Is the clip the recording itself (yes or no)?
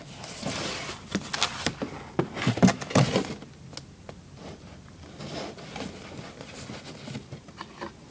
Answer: yes